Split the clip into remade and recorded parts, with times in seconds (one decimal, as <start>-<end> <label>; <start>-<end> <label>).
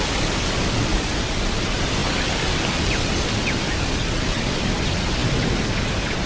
0.0-6.3 recorded